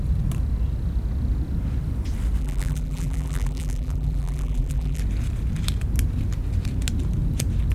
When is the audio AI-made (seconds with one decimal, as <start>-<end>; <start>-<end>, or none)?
2.4-5.0